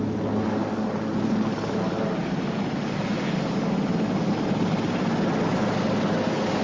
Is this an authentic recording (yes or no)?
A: yes